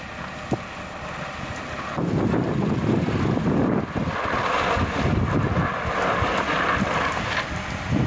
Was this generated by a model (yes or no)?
no